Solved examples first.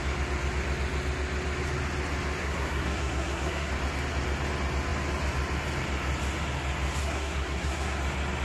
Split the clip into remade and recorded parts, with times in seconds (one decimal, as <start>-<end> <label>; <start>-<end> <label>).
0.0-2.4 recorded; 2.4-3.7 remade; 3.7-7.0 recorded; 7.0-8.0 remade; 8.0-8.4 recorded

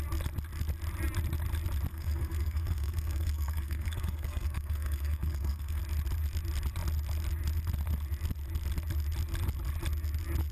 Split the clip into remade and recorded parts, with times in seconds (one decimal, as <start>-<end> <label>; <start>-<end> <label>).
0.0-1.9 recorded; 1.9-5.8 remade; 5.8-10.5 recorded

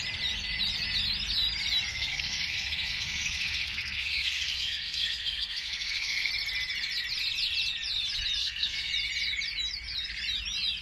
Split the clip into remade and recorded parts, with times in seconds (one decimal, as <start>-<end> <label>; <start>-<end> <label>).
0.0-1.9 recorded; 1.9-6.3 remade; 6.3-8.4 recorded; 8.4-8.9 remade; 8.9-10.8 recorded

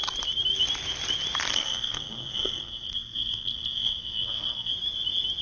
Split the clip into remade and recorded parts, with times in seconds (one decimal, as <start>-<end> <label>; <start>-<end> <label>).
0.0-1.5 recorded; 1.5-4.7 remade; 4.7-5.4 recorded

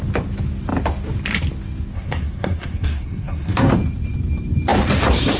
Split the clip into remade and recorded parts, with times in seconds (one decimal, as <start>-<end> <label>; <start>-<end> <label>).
0.0-1.9 recorded; 1.9-3.7 remade; 3.7-5.4 recorded

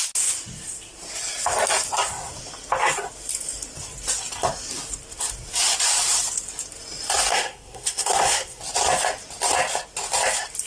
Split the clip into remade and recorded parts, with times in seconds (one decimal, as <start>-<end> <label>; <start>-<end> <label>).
0.0-7.3 recorded; 7.3-8.6 remade; 8.6-10.7 recorded

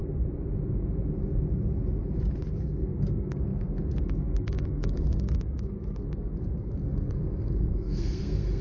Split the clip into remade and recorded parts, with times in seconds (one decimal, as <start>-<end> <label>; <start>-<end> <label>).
0.0-2.6 recorded; 2.6-8.6 remade

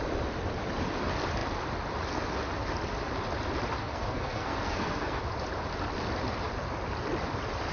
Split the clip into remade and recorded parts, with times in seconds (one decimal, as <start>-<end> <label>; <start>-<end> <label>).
0.0-3.8 recorded; 3.8-5.2 remade; 5.2-7.7 recorded